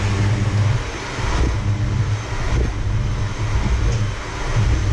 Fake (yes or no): no